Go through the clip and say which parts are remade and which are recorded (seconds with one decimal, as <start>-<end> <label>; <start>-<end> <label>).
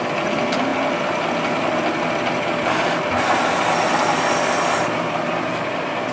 0.0-6.1 recorded